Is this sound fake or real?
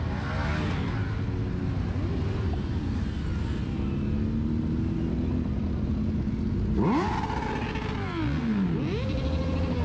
real